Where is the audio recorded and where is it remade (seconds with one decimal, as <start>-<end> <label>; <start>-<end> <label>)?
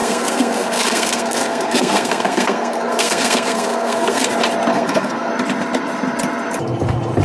0.0-4.3 remade; 4.3-4.7 recorded; 4.7-5.3 remade; 5.3-7.2 recorded